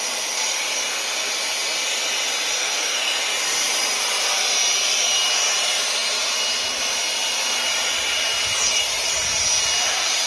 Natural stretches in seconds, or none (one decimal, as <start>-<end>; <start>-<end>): 0.0-2.6; 3.2-10.3